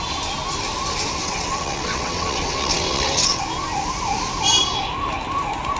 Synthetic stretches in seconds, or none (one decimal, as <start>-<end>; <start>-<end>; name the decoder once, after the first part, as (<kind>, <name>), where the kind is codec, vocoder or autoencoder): 1.2-3.4 (vocoder, WaveNeXt)